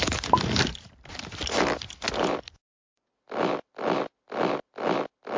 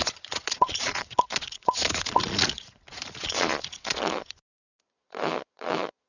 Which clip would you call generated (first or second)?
second